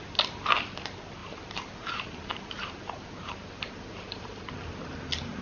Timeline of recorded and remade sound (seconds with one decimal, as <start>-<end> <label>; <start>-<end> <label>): 0.0-1.2 recorded; 1.2-4.4 remade; 4.4-5.4 recorded